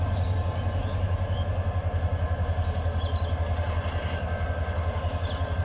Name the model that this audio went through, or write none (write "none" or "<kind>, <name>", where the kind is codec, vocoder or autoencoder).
none